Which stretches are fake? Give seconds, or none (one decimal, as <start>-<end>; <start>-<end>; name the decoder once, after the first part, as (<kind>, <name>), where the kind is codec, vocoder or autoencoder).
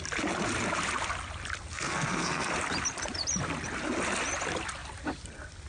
1.7-2.5 (codec, SNAC)